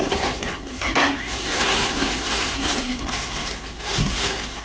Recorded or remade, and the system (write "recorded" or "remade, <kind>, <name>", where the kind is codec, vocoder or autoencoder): remade, codec, SNAC